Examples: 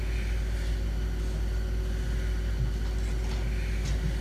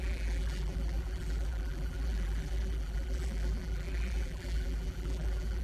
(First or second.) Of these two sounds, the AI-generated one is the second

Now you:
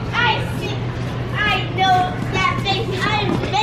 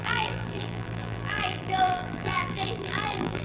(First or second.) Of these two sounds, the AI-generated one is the second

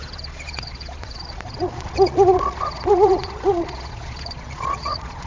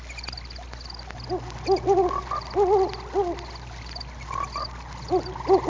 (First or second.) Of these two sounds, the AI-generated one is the first